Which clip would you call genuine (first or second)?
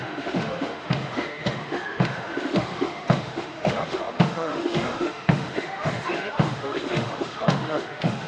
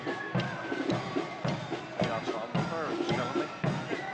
second